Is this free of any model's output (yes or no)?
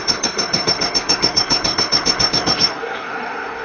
no